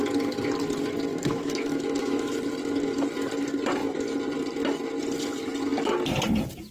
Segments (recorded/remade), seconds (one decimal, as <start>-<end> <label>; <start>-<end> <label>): 0.0-1.1 recorded; 1.1-2.3 remade; 2.3-6.7 recorded